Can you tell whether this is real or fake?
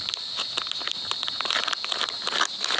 real